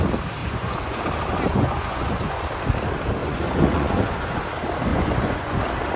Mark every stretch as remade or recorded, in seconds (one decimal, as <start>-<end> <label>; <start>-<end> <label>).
0.0-0.4 recorded; 0.4-1.0 remade; 1.0-1.5 recorded; 1.5-2.4 remade; 2.4-3.2 recorded; 3.2-4.4 remade; 4.4-4.9 recorded; 4.9-5.6 remade; 5.6-6.0 recorded